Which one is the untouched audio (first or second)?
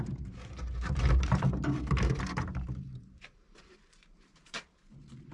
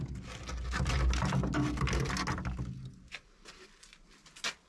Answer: second